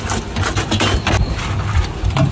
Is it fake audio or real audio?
real